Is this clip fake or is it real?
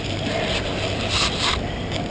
real